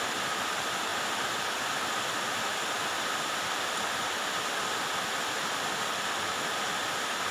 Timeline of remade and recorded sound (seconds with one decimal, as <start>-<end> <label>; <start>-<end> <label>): 0.0-7.3 recorded